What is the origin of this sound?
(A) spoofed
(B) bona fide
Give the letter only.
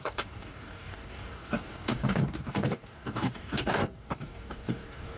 A